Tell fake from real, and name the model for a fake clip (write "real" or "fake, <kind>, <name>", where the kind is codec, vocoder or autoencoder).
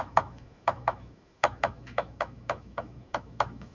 fake, autoencoder, DAC-VAE